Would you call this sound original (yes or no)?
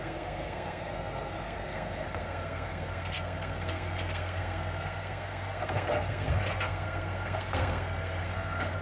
no